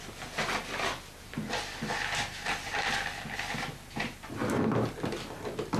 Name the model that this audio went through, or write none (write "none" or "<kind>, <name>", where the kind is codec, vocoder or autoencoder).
none